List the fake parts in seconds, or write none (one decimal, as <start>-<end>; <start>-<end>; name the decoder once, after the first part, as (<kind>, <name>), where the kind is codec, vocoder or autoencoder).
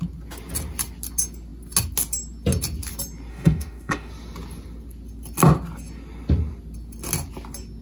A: 3.3-4.1 (autoencoder, DAC-VAE)